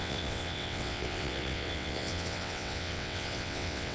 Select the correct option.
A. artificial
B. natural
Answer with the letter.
A